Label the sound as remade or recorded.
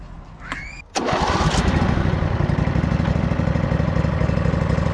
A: recorded